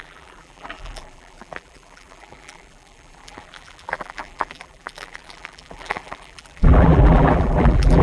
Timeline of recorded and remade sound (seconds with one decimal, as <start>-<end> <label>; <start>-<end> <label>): 0.0-8.0 remade